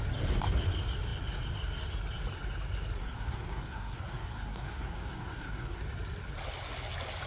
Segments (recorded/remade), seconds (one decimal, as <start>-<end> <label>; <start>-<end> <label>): 0.0-3.0 recorded; 3.0-5.8 remade; 5.8-7.3 recorded